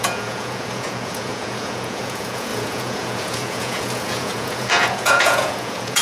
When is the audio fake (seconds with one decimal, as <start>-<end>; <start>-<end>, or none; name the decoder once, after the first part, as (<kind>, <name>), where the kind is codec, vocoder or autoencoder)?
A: 0.0-6.0 (vocoder, Vocos)